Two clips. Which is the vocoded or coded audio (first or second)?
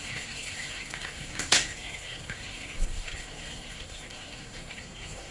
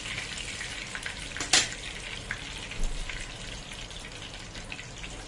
first